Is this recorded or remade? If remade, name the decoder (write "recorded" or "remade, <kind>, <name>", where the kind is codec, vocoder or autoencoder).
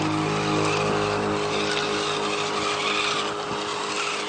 recorded